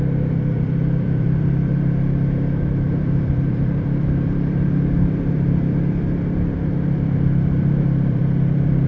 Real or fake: fake